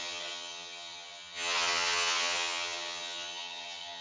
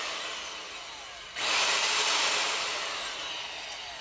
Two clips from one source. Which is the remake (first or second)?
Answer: first